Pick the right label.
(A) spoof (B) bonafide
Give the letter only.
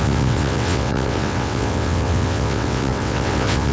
A